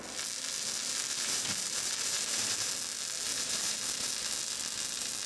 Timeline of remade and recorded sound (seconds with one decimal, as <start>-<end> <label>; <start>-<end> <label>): 0.0-1.1 recorded; 1.1-2.7 remade; 2.7-3.3 recorded; 3.3-4.1 remade; 4.1-5.3 recorded